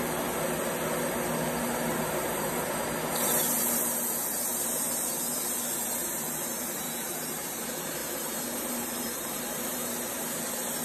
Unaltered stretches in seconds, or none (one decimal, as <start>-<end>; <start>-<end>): 0.0-1.9; 2.7-6.0; 7.6-8.0; 10.1-10.8